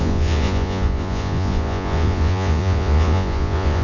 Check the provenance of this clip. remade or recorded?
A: remade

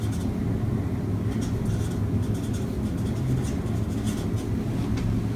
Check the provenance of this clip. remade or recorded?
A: recorded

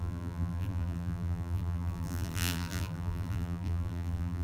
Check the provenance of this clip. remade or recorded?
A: remade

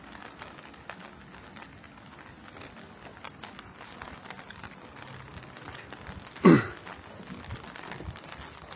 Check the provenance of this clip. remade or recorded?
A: recorded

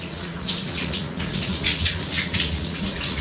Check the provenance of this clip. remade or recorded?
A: remade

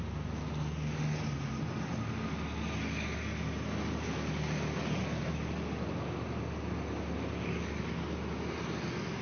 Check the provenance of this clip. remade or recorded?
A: recorded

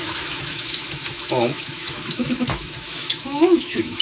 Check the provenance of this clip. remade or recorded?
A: remade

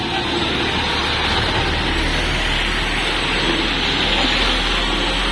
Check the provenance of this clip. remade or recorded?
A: recorded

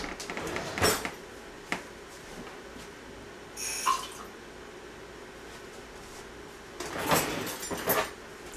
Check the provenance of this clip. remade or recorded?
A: recorded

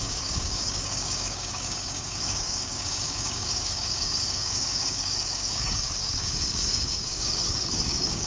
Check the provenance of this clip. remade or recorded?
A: remade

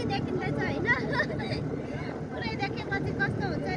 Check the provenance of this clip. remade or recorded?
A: recorded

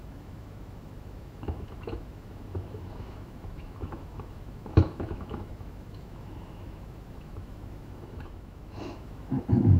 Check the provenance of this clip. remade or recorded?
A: remade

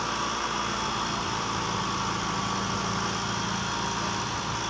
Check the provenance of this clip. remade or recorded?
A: recorded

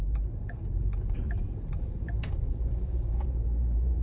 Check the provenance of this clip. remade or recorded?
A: remade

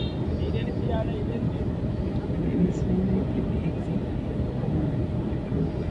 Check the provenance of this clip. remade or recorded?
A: recorded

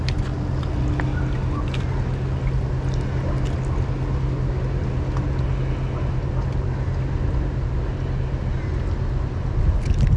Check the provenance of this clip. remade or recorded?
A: recorded